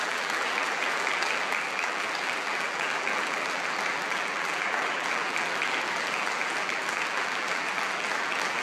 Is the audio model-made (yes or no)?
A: yes